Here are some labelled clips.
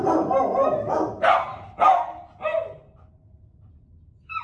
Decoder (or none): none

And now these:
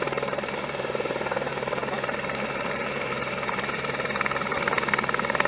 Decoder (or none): vocoder, BigVGAN v2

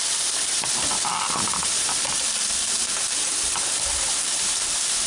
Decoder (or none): vocoder, BigVGAN v2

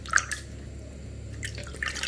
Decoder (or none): none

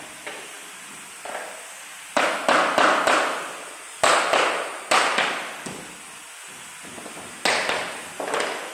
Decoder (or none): none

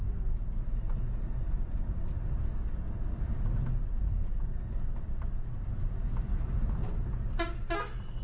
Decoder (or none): none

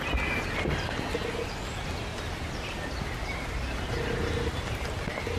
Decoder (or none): none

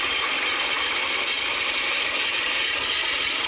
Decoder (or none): vocoder, BigVGAN v2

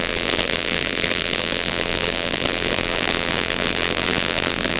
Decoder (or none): vocoder, BigVGAN v2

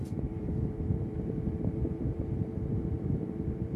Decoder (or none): vocoder, BigVGAN v2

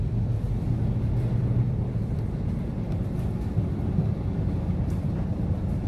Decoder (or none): none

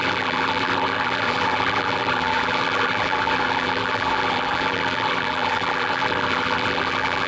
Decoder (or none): vocoder, BigVGAN v2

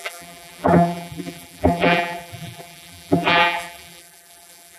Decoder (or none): vocoder, BigVGAN v2